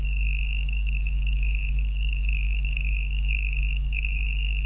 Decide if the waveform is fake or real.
fake